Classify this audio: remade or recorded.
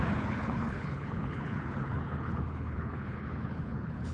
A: remade